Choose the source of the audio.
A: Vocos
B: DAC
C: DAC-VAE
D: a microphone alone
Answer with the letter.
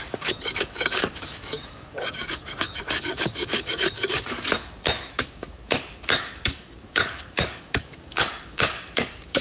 B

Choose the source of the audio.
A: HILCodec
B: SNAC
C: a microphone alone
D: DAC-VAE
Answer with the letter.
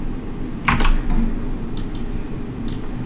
C